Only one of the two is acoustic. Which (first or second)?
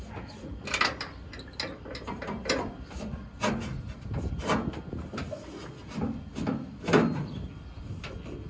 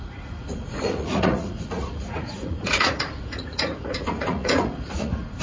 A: first